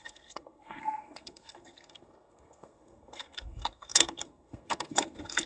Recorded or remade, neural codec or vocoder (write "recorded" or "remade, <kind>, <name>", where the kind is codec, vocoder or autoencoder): remade, codec, SNAC